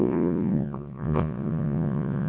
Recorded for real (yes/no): no